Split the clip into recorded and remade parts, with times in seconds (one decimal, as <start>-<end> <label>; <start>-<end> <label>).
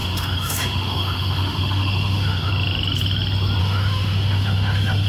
0.0-2.5 remade; 2.5-3.6 recorded; 3.6-5.1 remade